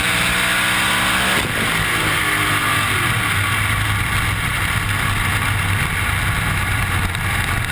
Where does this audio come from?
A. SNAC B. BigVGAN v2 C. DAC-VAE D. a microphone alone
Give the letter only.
D